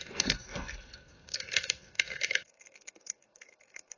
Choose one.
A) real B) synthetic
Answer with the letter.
B